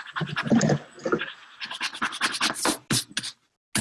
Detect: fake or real real